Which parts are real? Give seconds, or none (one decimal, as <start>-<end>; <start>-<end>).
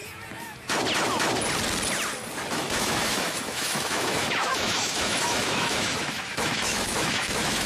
0.0-2.5